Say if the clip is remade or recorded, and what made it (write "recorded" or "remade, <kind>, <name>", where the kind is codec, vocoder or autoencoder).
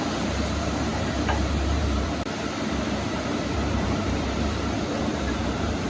remade, vocoder, BigVGAN v2